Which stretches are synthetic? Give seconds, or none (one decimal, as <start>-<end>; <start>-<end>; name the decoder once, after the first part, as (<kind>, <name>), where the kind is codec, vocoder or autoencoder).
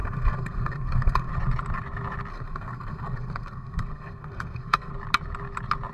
0.0-1.3 (codec, SNAC); 2.3-4.9